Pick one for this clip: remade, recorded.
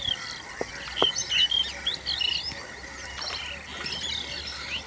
recorded